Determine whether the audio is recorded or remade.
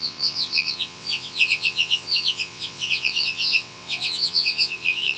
remade